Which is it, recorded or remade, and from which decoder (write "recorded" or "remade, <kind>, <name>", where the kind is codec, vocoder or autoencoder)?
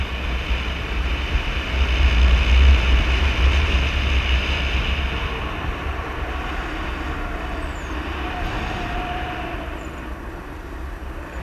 recorded